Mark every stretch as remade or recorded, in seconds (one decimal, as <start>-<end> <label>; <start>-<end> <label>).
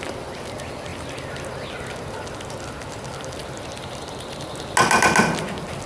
0.0-5.9 recorded